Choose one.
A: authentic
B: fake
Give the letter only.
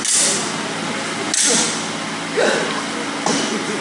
A